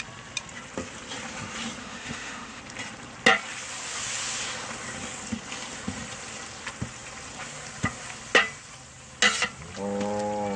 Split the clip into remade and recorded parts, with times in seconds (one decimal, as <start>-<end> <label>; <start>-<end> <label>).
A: 0.0-1.8 recorded; 1.8-2.6 remade; 2.6-10.6 recorded